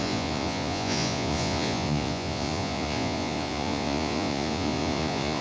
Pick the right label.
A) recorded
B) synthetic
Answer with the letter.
B